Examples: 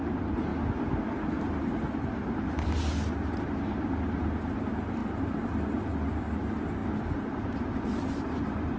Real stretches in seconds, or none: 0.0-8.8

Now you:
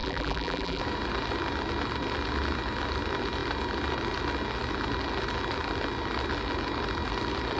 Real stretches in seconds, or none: 0.8-7.6

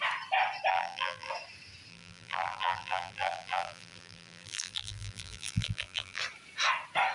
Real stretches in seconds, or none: 0.0-0.7; 1.3-1.9; 6.2-7.1

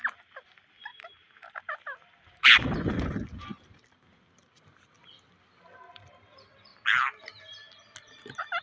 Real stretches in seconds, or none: 0.0-0.9; 2.4-8.6

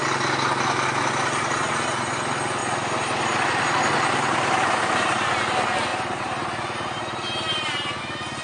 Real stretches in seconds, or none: 0.0-5.9; 8.0-8.4